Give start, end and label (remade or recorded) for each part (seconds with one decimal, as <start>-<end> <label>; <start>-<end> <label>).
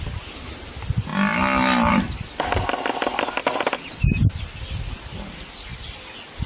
0.0-6.5 recorded